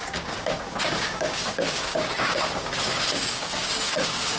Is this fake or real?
fake